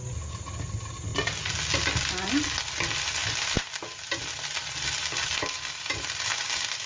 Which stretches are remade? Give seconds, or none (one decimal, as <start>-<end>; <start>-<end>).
none